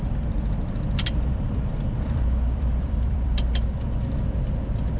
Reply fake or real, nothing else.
fake